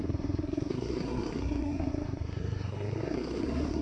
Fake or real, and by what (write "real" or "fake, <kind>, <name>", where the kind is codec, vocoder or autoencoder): fake, codec, SNAC